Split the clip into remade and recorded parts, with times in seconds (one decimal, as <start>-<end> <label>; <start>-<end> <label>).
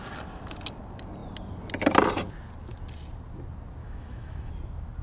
0.0-3.8 recorded; 3.8-4.5 remade; 4.5-5.0 recorded